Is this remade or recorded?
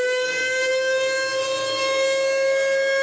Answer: remade